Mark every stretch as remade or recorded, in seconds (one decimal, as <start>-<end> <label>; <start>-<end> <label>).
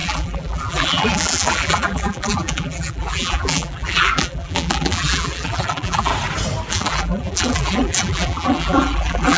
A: 0.0-6.1 remade; 6.1-6.7 recorded; 6.7-9.4 remade